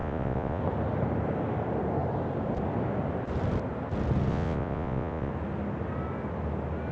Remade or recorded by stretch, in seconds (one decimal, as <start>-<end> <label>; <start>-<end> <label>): 0.0-0.6 remade; 0.6-4.3 recorded; 4.3-5.3 remade; 5.3-6.9 recorded